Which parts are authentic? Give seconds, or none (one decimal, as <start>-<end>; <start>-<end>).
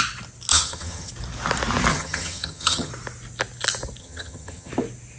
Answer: 0.0-0.5; 1.1-1.9; 2.9-4.0; 4.7-5.2